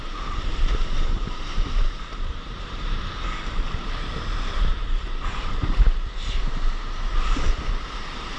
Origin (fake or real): fake